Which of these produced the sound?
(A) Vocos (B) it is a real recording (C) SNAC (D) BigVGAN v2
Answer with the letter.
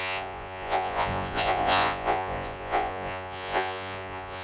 A